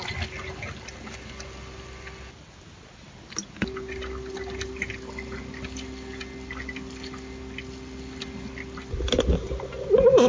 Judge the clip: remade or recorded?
recorded